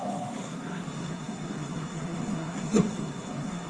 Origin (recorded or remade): remade